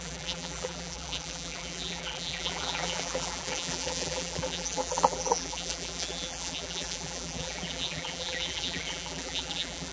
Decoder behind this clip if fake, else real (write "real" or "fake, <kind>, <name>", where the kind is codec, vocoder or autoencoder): fake, vocoder, BigVGAN v2